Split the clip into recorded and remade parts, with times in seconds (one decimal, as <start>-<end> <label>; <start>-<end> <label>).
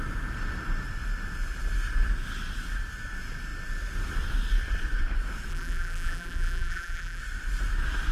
0.0-5.5 recorded; 5.5-7.2 remade; 7.2-8.1 recorded